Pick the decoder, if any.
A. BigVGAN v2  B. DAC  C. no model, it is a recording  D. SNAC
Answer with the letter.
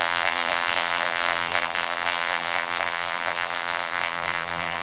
A